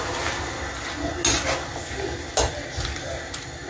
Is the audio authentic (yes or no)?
yes